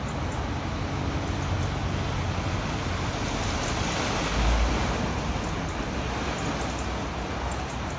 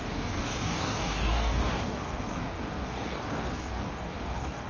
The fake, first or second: second